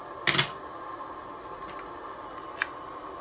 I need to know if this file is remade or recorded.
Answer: recorded